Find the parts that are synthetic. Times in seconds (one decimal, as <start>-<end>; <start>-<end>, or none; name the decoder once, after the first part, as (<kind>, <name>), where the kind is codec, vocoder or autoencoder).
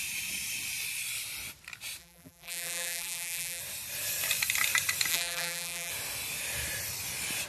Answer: 2.0-3.6 (vocoder, BigVGAN v2); 5.1-5.9